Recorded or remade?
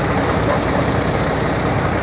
remade